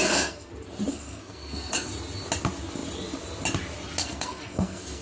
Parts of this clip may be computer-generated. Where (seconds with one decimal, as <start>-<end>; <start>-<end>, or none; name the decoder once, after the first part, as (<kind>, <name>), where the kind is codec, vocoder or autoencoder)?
0.0-0.5 (codec, SNAC); 0.9-1.9; 4.0-5.0